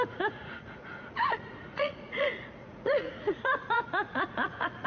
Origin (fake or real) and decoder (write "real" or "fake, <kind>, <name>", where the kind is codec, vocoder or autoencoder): fake, vocoder, Vocos